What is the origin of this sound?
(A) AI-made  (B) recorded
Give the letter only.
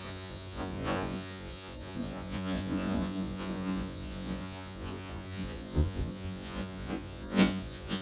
A